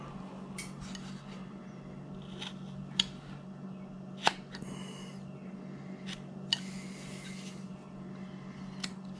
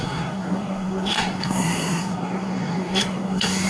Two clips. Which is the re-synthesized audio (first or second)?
second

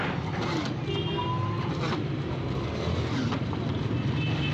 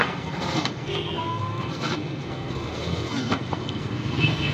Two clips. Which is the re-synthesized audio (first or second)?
second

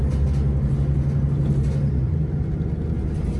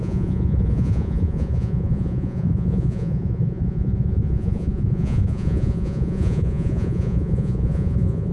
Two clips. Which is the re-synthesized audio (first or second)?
second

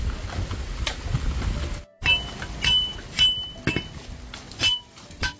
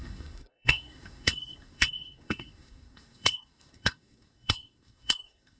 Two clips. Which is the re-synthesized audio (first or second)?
second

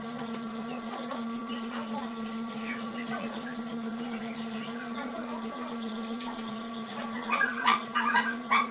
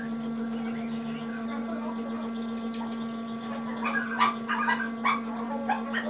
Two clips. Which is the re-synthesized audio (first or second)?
first